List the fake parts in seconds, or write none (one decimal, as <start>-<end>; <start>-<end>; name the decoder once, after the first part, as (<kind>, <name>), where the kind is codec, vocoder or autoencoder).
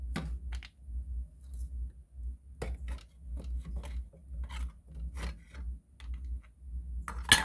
none